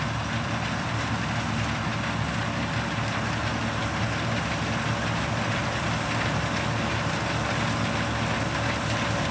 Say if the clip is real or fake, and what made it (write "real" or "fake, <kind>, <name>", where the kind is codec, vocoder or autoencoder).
real